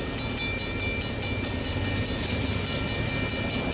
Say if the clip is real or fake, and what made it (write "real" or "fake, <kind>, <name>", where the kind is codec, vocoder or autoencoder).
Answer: real